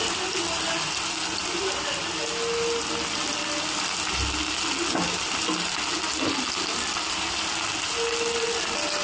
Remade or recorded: recorded